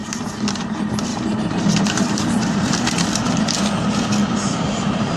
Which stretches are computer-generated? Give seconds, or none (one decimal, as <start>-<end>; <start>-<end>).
0.0-0.6; 1.1-2.8; 4.2-5.2